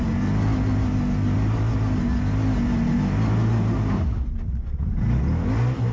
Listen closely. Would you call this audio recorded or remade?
recorded